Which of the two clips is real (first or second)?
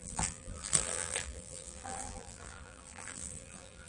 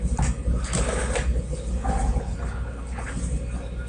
second